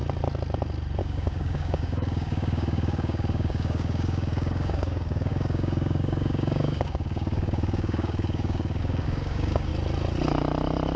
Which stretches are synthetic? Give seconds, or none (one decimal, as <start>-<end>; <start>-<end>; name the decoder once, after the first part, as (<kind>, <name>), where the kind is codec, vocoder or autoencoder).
1.0-9.7 (codec, DAC)